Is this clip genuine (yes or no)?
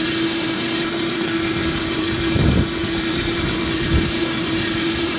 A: no